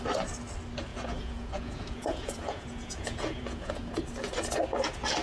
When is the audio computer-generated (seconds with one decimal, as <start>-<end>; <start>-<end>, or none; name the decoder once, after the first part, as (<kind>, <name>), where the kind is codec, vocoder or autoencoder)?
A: 0.9-4.0 (vocoder, Vocos)